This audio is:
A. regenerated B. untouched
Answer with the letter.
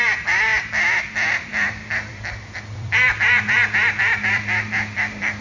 A